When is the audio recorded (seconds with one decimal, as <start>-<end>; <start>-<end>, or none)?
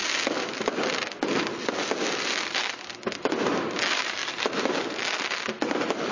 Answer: 0.0-6.1